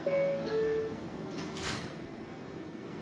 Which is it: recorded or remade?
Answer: remade